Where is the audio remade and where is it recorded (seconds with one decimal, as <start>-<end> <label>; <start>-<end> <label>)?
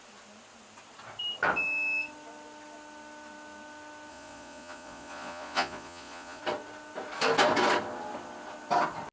0.0-4.1 recorded; 4.1-6.4 remade; 6.4-9.1 recorded